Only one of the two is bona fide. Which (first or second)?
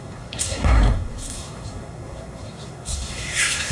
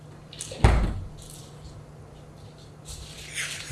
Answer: second